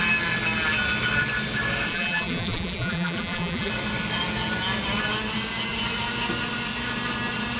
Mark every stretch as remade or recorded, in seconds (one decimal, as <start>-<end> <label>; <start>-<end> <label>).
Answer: 0.0-1.9 recorded; 1.9-3.7 remade; 3.7-7.6 recorded

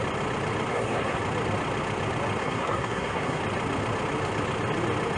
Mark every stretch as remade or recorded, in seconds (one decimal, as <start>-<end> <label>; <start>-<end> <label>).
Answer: 0.0-0.7 recorded; 0.7-1.2 remade; 1.2-2.4 recorded; 2.4-3.4 remade; 3.4-5.2 recorded

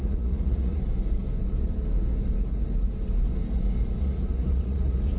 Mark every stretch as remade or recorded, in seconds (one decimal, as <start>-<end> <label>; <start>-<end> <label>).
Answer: 0.0-0.8 remade; 0.8-4.0 recorded; 4.0-5.2 remade

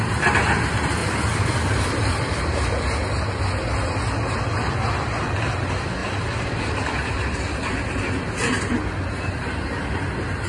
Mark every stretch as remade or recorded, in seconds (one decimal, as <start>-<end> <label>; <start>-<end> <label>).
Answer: 0.0-1.0 recorded; 1.0-2.4 remade; 2.4-6.0 recorded; 6.0-8.1 remade; 8.1-10.5 recorded

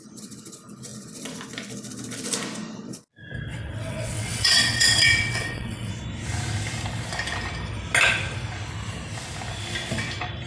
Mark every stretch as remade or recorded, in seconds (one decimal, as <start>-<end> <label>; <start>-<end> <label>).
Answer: 0.0-3.5 recorded; 3.5-5.9 remade; 5.9-10.5 recorded

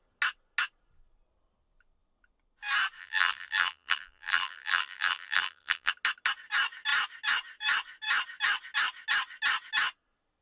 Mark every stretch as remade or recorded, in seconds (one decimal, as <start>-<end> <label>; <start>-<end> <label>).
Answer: 0.0-3.0 recorded; 3.0-5.9 remade; 5.9-10.4 recorded

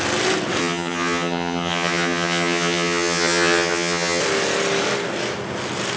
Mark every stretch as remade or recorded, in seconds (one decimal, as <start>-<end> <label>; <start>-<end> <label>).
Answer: 0.0-0.6 recorded; 0.6-4.2 remade; 4.2-6.0 recorded